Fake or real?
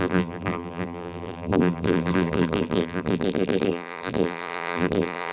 fake